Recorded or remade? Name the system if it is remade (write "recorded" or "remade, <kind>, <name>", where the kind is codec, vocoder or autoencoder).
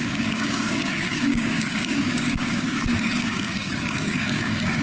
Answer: remade, codec, DAC